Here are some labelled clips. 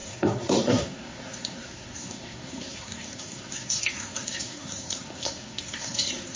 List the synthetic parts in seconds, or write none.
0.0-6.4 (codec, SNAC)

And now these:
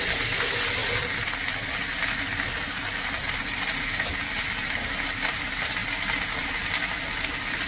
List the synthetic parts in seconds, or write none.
none

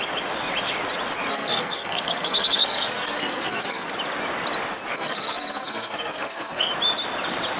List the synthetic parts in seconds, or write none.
1.3-3.9 (codec, SNAC); 4.9-6.7

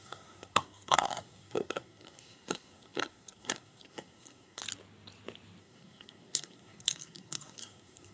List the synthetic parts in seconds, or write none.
0.0-4.6 (codec, SNAC); 5.6-8.1

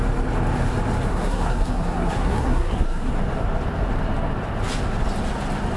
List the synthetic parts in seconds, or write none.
1.1-3.1 (codec, SNAC)

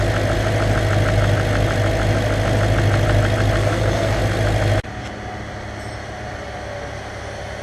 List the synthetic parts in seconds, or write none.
3.6-4.2 (codec, SNAC)